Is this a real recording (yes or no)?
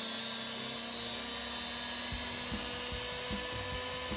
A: yes